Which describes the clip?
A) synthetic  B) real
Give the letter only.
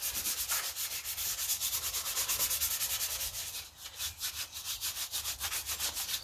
B